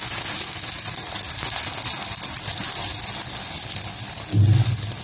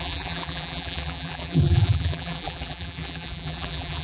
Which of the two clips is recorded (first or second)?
first